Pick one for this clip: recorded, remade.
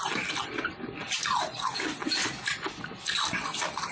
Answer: recorded